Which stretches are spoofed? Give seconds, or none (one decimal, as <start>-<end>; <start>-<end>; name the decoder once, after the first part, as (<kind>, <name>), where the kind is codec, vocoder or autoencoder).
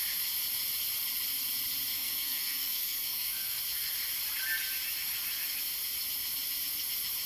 1.9-3.6 (codec, SNAC)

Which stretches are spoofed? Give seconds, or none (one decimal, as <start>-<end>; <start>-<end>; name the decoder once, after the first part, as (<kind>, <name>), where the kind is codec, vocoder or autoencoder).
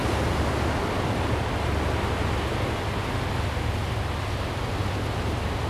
none